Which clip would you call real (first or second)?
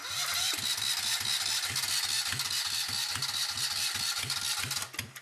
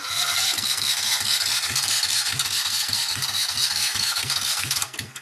first